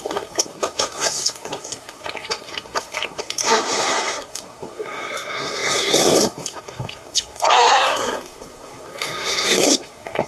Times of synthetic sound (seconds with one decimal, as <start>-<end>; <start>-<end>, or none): 0.0-10.3